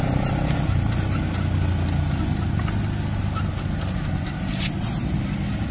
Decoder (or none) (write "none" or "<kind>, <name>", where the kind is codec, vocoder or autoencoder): none